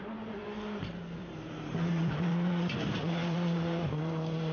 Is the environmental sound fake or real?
fake